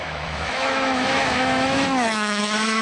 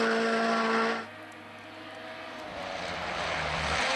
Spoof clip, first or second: first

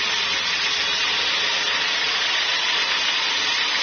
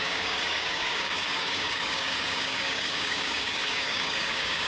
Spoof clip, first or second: second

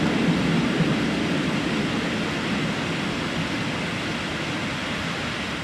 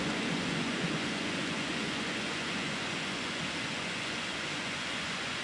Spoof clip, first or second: second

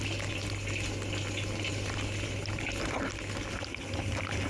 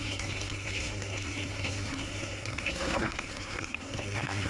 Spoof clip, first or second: second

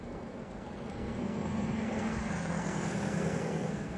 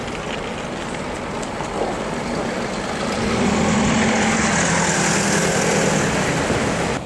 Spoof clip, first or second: first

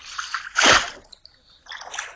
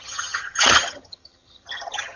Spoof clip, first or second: second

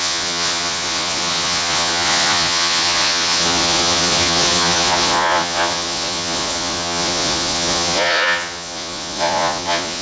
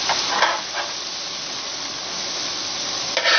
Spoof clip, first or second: first